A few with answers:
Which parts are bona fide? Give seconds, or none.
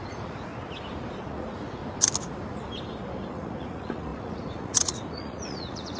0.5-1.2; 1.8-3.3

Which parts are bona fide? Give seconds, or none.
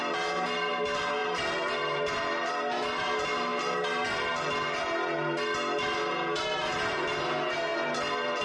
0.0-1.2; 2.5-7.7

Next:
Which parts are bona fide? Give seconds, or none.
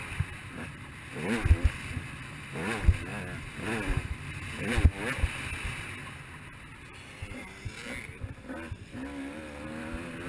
0.0-10.3